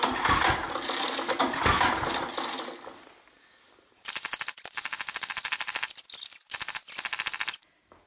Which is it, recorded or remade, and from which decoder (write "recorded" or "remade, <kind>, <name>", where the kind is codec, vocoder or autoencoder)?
recorded